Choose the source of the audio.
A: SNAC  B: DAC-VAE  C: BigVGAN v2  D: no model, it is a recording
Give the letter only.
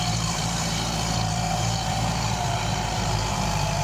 C